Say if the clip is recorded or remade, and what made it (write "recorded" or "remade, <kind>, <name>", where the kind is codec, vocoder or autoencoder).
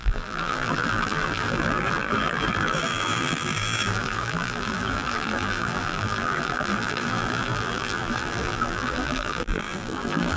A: remade, vocoder, BigVGAN v2